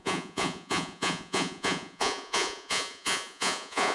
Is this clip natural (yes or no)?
no